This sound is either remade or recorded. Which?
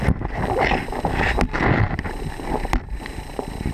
recorded